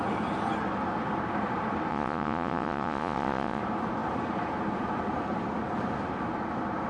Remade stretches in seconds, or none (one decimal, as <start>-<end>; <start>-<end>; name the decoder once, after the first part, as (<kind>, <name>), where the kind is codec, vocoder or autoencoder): 1.9-3.6 (vocoder, Vocos)